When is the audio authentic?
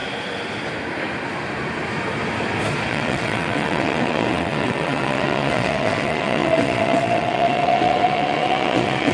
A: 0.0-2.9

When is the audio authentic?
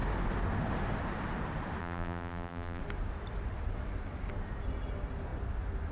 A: 0.0-1.8; 2.8-5.9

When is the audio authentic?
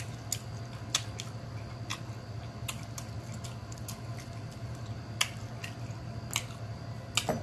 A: 0.0-7.4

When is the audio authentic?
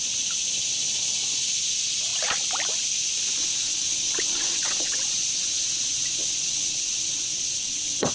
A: 0.0-3.4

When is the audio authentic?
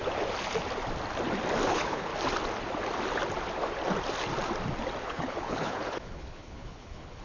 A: 0.0-1.7; 2.1-5.0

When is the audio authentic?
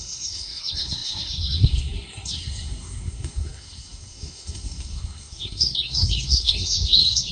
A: none